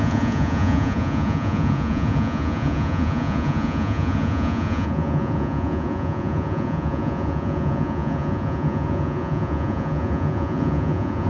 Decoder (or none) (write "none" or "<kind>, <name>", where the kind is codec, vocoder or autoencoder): vocoder, Vocos